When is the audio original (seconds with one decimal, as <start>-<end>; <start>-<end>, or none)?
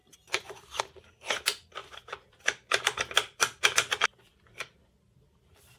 0.8-1.8; 4.8-5.8